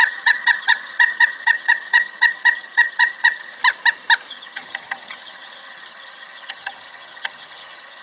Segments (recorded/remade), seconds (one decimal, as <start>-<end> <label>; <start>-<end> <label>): 0.0-3.6 remade; 3.6-4.3 recorded; 4.3-8.0 remade